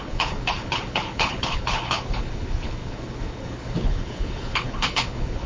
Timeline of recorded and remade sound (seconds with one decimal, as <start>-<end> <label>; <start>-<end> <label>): 0.0-5.5 remade